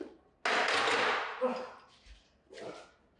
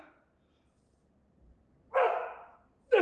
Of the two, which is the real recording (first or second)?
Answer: first